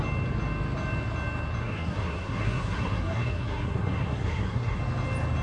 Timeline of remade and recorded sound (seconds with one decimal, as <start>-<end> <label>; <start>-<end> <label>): 0.0-1.6 recorded; 1.6-4.8 remade; 4.8-5.4 recorded